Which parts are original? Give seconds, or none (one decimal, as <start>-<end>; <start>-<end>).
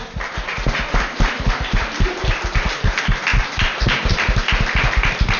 0.0-3.3; 4.9-5.4